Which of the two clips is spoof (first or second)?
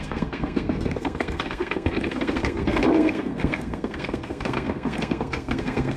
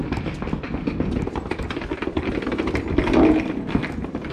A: first